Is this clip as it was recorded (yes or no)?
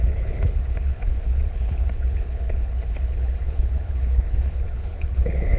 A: no